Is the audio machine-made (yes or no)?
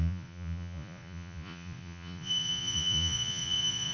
yes